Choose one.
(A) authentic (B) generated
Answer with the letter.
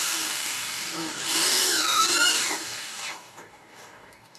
B